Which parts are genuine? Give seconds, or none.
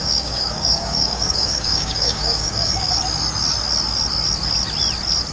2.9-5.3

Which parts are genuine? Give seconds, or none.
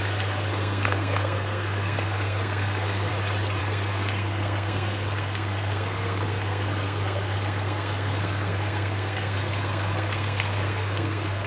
3.1-3.6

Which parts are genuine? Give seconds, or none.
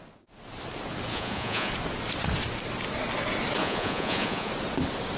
0.0-1.1; 1.7-3.6; 4.5-5.2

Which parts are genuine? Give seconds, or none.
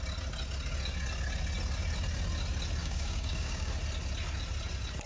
0.0-2.8; 3.7-5.1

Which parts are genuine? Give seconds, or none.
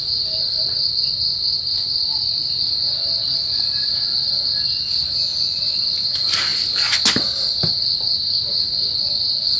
0.0-9.6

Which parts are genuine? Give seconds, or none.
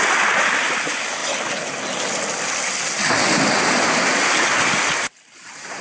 0.0-5.8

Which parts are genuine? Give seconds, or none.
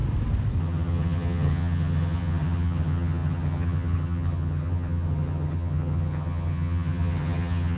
0.0-0.6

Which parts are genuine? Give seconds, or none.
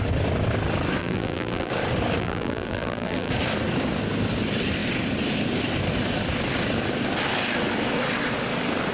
0.0-1.0; 1.7-2.2; 3.3-8.9